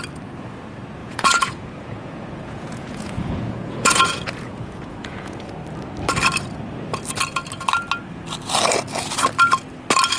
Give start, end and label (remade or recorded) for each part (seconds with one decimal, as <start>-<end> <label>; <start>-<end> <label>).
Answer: 0.0-1.0 recorded; 1.0-5.5 remade; 5.5-10.2 recorded